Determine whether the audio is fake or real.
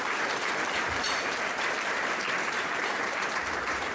fake